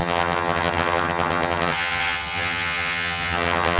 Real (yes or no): no